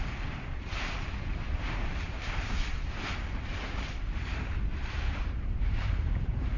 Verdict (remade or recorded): remade